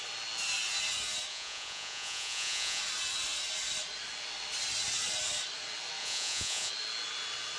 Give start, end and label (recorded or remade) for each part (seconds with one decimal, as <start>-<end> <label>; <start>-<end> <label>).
0.0-1.3 recorded; 1.3-2.8 remade; 2.8-6.0 recorded; 6.0-6.7 remade; 6.7-7.6 recorded